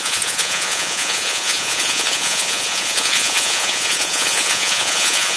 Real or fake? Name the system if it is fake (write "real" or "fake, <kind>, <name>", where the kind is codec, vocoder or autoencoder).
fake, vocoder, Vocos